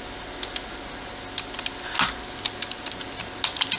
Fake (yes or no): no